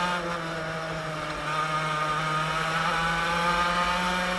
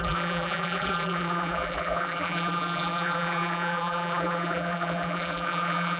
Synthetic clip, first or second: second